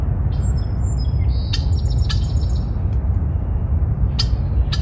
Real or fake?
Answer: real